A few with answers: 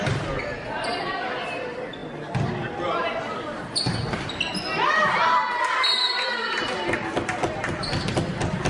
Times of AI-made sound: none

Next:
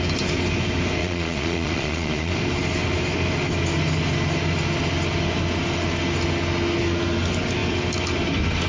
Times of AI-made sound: 1.0-2.3 (vocoder, Vocos)

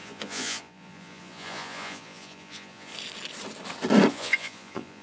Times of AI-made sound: 0.0-2.9 (vocoder, Vocos); 4.1-5.0